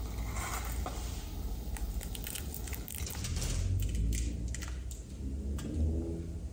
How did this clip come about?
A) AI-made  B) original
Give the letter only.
B